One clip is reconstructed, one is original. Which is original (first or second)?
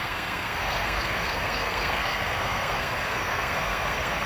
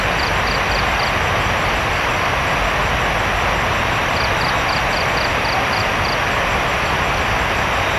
second